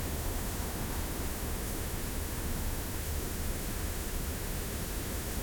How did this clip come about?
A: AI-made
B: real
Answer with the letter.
A